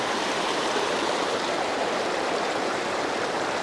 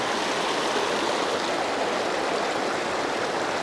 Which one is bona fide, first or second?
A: second